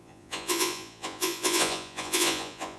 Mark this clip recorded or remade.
remade